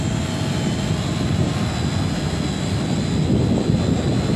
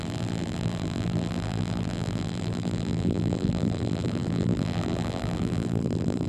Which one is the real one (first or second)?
first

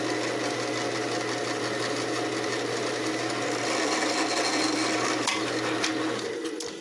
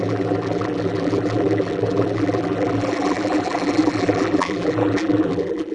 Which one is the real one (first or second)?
first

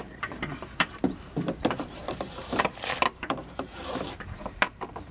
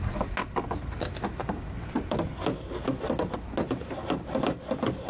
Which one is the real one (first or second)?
second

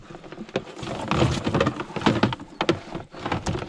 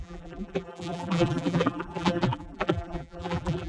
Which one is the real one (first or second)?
first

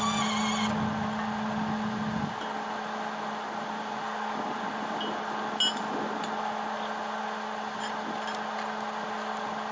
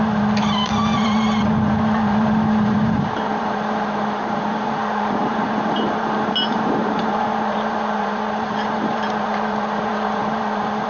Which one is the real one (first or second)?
first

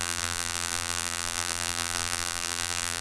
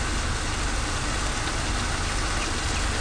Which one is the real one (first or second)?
second